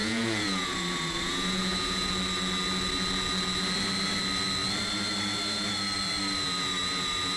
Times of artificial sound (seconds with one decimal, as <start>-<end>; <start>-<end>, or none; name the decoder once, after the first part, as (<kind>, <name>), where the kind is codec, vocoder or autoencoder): 0.0-2.1 (vocoder, Vocos)